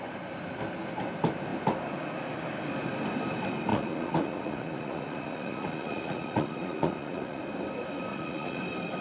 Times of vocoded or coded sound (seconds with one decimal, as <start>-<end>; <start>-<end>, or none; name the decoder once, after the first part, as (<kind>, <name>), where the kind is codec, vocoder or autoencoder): 3.7-7.4 (vocoder, Vocos); 8.1-8.6